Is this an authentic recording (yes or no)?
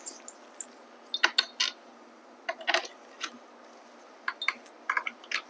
yes